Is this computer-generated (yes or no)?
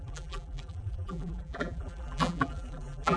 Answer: yes